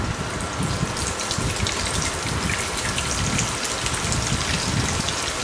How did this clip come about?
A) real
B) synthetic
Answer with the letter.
A